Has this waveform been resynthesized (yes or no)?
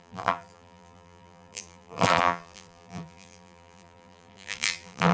yes